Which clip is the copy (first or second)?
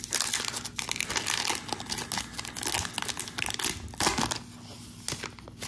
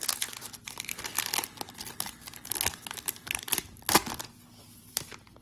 second